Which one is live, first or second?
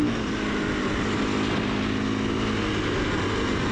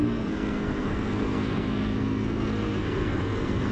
first